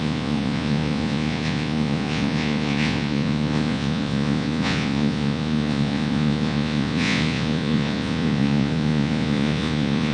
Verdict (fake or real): fake